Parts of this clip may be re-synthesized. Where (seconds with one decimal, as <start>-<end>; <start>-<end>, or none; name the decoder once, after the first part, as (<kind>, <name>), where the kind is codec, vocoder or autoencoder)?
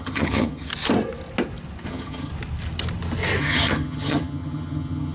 0.0-0.7 (vocoder, HiFi-GAN); 1.9-2.3; 3.4-5.1